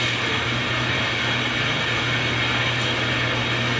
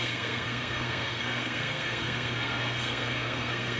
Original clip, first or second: first